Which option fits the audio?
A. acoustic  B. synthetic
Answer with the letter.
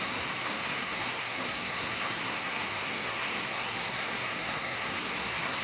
B